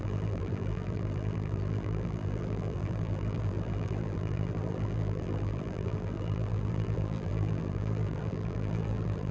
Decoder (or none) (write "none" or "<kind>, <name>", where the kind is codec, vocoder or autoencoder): vocoder, BigVGAN v2